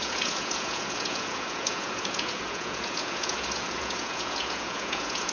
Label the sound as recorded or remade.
remade